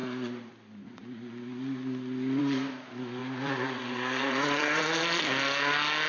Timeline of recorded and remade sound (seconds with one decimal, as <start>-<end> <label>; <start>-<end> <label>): 0.0-0.5 remade; 0.5-3.2 recorded; 3.2-4.8 remade; 4.8-6.1 recorded